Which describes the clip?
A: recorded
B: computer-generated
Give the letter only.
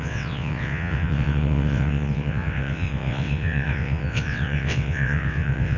B